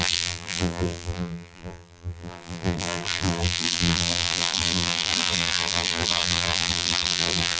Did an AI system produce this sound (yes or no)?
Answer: yes